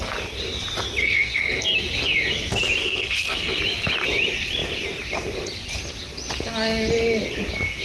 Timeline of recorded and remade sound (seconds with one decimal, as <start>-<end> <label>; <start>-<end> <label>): 0.0-1.0 recorded; 1.0-1.6 remade; 1.6-2.8 recorded; 2.8-3.6 remade; 3.6-7.8 recorded